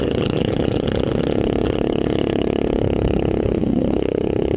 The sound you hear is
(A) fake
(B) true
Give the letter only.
A